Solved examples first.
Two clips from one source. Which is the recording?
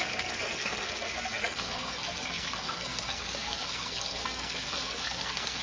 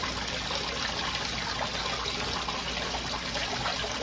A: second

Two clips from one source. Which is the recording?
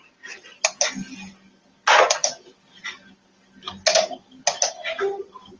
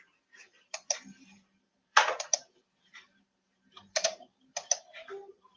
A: first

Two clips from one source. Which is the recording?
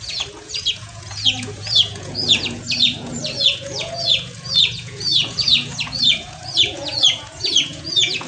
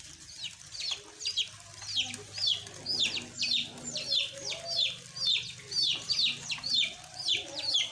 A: second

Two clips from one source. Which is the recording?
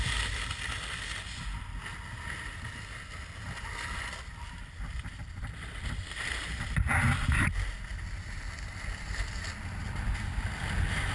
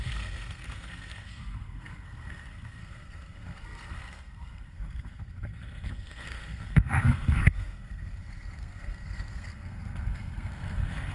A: first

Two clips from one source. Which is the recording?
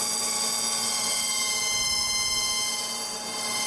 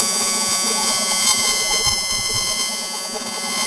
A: first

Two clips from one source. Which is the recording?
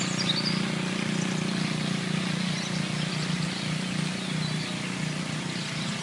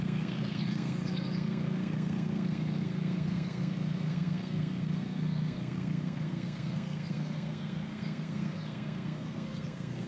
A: first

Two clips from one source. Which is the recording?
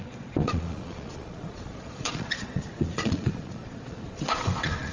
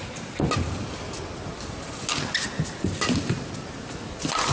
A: second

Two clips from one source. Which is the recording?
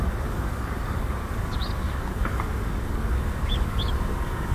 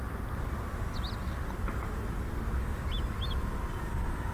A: second